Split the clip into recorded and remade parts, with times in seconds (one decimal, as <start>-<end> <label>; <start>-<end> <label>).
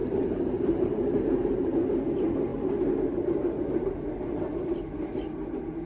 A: 0.0-1.6 remade; 1.6-2.5 recorded; 2.5-4.0 remade; 4.0-5.9 recorded